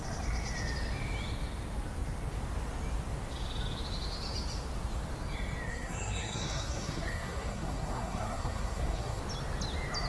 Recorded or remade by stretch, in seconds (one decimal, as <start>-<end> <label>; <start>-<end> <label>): 0.0-5.7 recorded; 5.7-9.2 remade; 9.2-10.1 recorded